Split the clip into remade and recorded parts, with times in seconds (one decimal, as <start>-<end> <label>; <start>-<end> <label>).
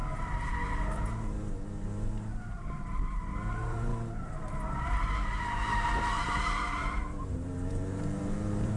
0.0-1.0 recorded; 1.0-3.9 remade; 3.9-4.8 recorded; 4.8-8.8 remade